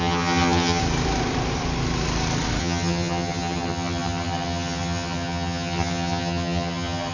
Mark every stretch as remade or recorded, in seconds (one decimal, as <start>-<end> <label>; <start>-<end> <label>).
0.0-0.8 remade; 0.8-2.6 recorded; 2.6-7.1 remade